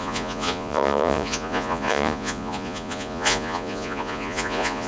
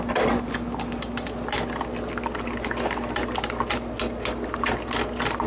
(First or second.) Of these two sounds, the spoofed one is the first